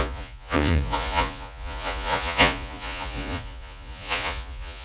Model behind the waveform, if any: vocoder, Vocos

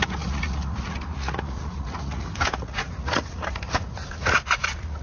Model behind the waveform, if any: vocoder, Vocos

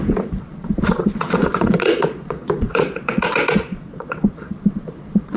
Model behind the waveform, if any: vocoder, Vocos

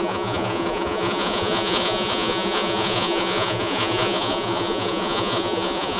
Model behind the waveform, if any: vocoder, Vocos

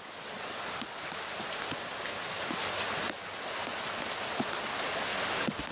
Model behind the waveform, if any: none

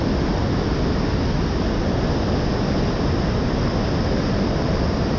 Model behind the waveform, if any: none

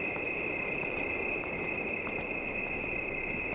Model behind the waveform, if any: none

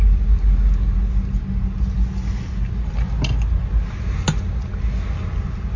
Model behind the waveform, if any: none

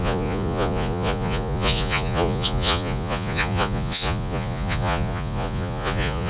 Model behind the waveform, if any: vocoder, Vocos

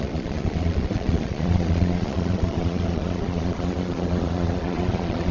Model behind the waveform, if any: vocoder, Vocos